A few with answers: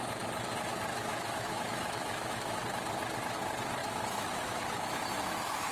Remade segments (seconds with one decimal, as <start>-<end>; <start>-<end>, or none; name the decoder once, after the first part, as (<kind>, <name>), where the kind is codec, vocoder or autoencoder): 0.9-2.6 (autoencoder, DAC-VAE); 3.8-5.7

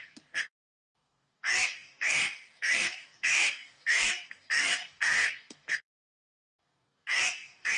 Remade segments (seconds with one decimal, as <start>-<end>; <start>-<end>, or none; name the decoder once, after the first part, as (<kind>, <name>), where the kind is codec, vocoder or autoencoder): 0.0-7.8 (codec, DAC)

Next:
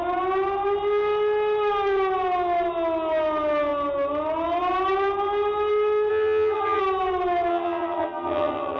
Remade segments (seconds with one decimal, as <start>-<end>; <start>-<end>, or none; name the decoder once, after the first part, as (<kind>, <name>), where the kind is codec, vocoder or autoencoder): 6.1-6.8 (vocoder, HiFi-GAN); 7.5-8.8